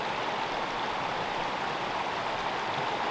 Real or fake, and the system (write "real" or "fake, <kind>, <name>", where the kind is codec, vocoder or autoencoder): real